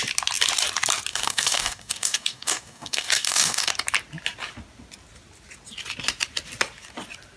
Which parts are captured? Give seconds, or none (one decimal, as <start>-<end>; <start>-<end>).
0.0-1.1; 3.7-7.4